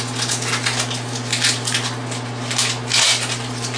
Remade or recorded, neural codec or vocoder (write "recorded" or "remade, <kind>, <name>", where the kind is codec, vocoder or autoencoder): recorded